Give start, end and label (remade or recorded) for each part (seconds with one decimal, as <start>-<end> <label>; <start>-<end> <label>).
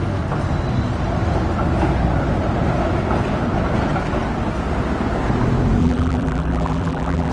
0.0-5.8 recorded; 5.8-7.3 remade